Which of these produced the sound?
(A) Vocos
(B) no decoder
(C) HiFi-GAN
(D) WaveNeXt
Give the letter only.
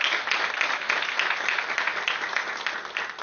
B